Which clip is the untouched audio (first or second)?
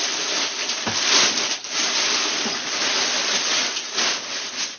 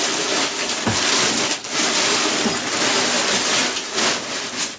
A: second